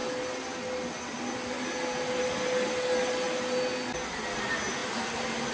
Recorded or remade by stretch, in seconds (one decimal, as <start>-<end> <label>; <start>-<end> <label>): 0.0-5.5 recorded